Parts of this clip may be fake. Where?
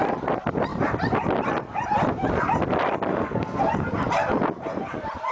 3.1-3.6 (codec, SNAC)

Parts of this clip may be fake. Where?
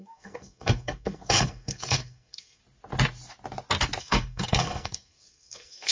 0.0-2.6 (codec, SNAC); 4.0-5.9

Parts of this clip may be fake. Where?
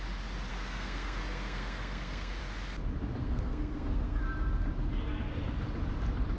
0.5-2.4 (codec, SNAC); 3.2-4.2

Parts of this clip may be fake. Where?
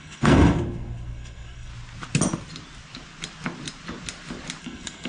0.0-1.7 (codec, SNAC); 4.6-5.1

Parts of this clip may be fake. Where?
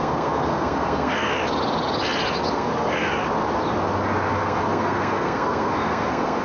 0.0-1.3 (codec, SNAC); 2.5-3.1; 4.3-6.4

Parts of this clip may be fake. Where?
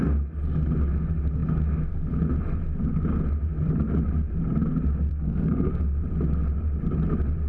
5.1-5.8 (codec, SNAC)